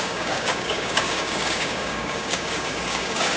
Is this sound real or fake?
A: fake